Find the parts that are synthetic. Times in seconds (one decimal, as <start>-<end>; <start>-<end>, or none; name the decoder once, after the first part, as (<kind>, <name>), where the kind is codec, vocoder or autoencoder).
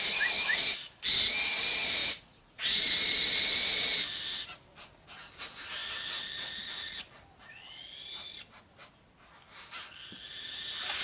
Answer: 2.0-2.8 (vocoder, Vocos)